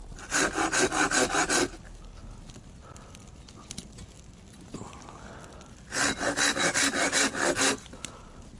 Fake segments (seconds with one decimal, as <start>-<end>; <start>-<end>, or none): none